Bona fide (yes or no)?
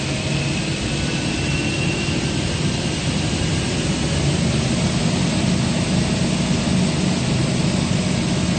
yes